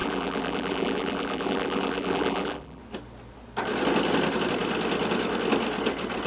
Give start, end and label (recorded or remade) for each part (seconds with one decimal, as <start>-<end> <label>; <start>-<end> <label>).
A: 0.0-2.8 remade; 2.8-6.3 recorded